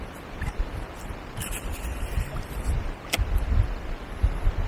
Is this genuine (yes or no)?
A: yes